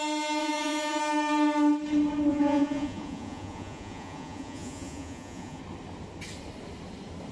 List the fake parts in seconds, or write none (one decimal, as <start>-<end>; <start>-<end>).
0.4-1.0; 2.3-5.6